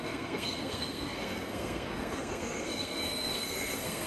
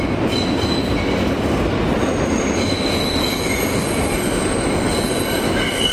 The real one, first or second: second